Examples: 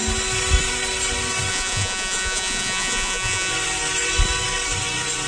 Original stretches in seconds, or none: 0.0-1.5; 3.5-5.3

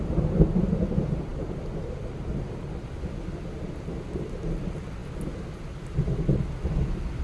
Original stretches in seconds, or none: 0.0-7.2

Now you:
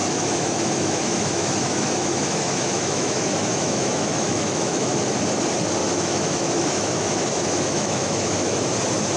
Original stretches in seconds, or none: 5.0-5.8; 8.7-9.2